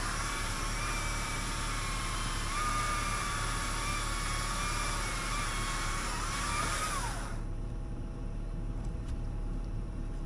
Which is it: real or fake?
fake